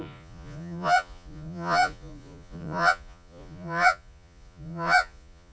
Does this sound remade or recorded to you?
remade